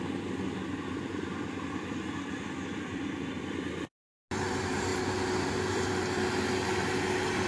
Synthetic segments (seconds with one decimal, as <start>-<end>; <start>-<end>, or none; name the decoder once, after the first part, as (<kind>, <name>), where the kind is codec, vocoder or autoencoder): none